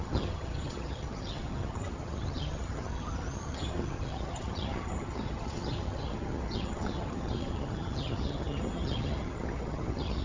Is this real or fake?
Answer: fake